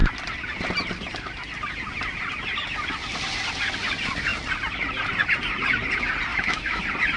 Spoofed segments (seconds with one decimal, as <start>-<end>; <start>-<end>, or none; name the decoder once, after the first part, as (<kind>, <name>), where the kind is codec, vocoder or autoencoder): 6.3-6.8 (autoencoder, DAC-VAE)